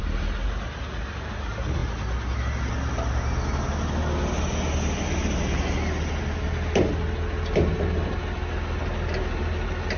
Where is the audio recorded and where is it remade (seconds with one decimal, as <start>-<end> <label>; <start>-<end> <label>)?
0.0-10.0 recorded